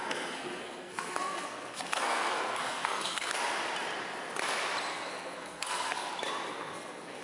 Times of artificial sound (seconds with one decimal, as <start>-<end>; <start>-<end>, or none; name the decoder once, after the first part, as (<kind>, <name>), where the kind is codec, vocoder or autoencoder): 0.0-3.3 (codec, SNAC); 4.9-6.1; 6.5-7.2